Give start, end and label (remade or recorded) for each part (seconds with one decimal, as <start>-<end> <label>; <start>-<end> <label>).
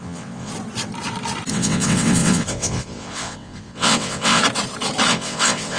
0.0-0.5 remade; 0.5-1.5 recorded; 1.5-4.4 remade; 4.4-5.1 recorded; 5.1-5.8 remade